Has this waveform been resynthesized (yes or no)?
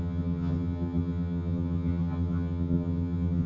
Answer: yes